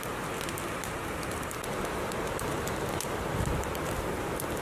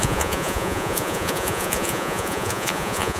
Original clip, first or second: first